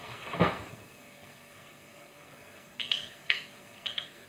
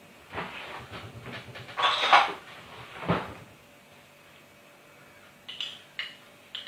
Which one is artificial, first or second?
first